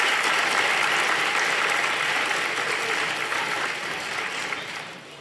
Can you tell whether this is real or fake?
real